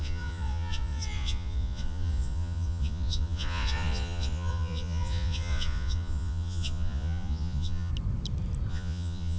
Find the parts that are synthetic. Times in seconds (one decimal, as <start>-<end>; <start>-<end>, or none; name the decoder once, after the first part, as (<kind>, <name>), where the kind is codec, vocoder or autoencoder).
0.0-7.9 (vocoder, Vocos); 8.7-9.4